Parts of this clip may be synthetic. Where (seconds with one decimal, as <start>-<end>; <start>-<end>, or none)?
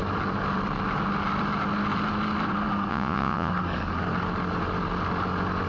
2.9-3.5